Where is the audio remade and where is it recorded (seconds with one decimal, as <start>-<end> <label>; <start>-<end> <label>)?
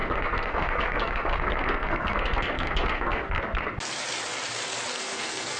0.0-3.4 remade; 3.4-4.9 recorded; 4.9-5.6 remade